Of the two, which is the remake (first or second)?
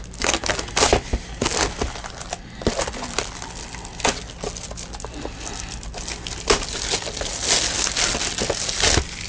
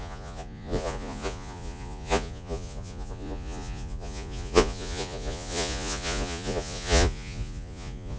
second